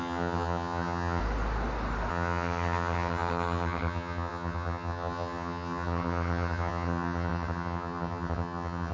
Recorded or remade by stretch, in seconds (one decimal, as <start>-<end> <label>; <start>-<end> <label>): 0.0-1.2 remade; 1.2-2.1 recorded; 2.1-8.9 remade